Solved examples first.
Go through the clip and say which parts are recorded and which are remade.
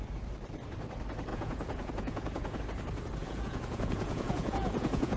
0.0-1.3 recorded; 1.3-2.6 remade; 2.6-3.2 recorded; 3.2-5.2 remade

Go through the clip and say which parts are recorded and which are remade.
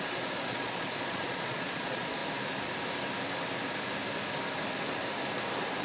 0.0-2.2 remade; 2.2-5.8 recorded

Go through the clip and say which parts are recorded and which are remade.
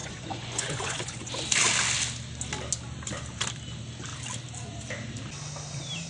0.0-1.3 remade; 1.3-6.1 recorded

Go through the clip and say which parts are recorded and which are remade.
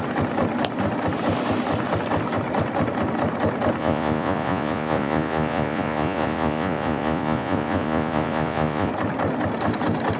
0.0-3.8 recorded; 3.8-8.9 remade; 8.9-10.2 recorded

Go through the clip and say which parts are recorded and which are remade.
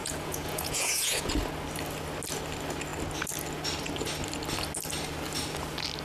0.0-1.3 remade; 1.3-6.0 recorded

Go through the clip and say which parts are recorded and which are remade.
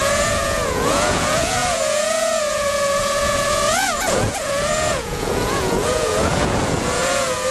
0.0-7.5 remade